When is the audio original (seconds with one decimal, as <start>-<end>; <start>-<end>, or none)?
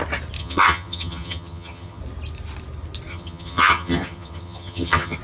0.0-0.4; 2.0-3.1